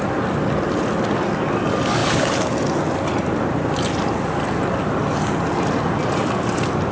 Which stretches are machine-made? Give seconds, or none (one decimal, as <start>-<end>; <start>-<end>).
none